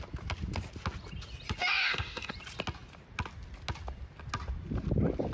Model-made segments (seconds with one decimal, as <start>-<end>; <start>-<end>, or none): 1.6-2.3